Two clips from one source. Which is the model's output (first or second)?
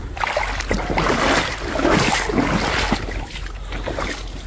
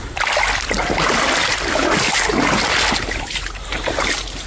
second